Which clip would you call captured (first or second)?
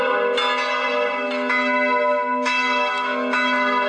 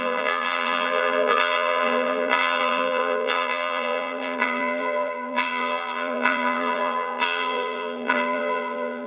first